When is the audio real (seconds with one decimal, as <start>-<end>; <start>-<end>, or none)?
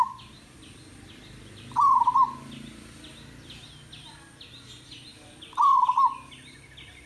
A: 0.0-7.1